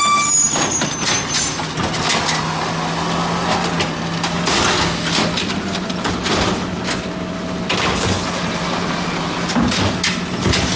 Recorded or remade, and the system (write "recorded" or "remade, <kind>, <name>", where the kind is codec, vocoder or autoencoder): recorded